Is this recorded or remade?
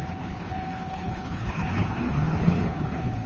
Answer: remade